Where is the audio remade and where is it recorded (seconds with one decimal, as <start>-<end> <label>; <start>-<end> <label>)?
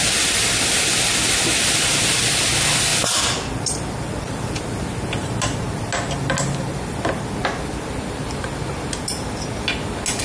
0.0-2.9 recorded; 2.9-4.6 remade; 4.6-5.2 recorded; 5.2-5.9 remade; 5.9-10.2 recorded